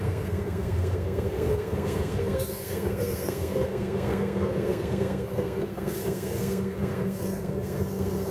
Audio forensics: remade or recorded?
remade